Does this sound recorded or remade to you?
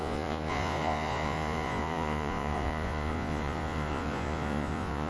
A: remade